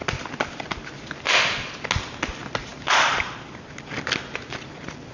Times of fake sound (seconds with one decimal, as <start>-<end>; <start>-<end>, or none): none